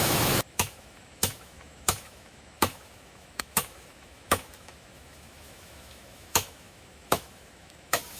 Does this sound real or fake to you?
fake